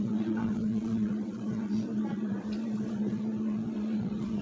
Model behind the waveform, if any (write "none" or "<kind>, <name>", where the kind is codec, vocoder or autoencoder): vocoder, Vocos